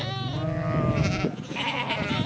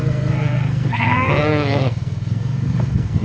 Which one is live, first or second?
first